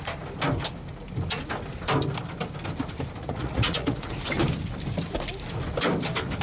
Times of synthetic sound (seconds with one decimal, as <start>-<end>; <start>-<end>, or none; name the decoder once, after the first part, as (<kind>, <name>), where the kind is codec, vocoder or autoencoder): 3.2-4.2 (vocoder, Vocos)